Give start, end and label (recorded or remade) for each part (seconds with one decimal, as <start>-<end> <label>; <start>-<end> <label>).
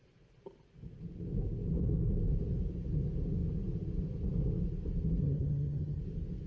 0.0-5.2 recorded; 5.2-6.0 remade; 6.0-6.5 recorded